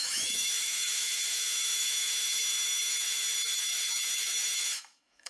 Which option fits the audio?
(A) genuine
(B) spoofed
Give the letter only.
B